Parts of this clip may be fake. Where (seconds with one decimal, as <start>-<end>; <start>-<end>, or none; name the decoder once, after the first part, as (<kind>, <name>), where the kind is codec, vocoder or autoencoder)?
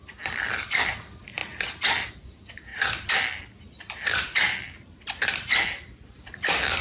0.0-1.4 (vocoder, BigVGAN v2); 2.1-6.8